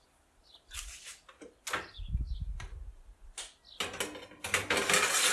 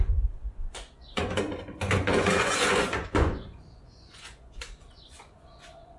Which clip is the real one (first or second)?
first